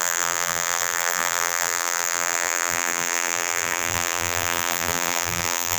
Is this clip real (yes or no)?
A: no